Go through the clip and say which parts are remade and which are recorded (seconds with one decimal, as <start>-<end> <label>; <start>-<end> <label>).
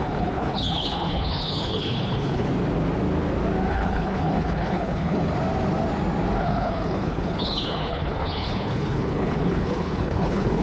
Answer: 0.0-2.5 remade; 2.5-3.7 recorded; 3.7-5.3 remade; 5.3-6.4 recorded; 6.4-10.6 remade